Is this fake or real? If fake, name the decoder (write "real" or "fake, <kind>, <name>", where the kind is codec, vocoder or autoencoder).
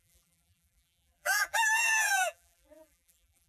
fake, vocoder, BigVGAN v2